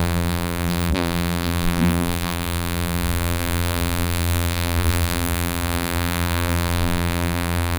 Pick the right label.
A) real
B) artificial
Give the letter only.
B